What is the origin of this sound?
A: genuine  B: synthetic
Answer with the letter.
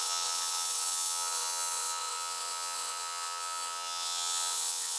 B